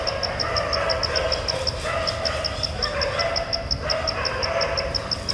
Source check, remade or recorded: recorded